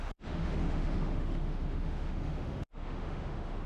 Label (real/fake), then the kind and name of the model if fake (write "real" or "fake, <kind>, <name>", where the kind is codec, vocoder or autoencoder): fake, autoencoder, DAC-VAE